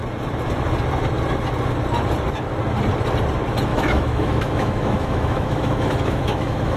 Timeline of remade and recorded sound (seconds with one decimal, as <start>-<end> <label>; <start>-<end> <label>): 0.0-3.7 recorded; 3.7-6.8 remade